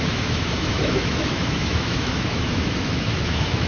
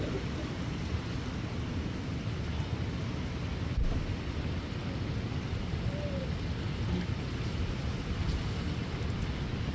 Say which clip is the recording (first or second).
second